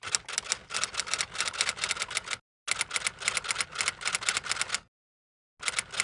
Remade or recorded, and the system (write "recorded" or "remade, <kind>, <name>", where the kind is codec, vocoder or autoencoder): recorded